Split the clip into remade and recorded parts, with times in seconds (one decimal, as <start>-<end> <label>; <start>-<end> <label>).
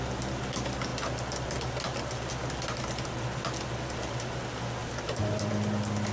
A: 0.0-4.8 recorded; 4.8-5.5 remade; 5.5-6.1 recorded